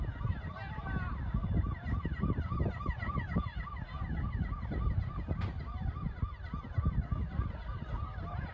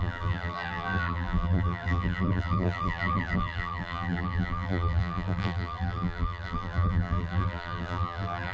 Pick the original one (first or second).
first